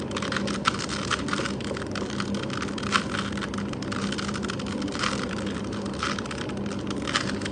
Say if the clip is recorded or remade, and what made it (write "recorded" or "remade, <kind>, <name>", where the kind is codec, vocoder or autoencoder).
recorded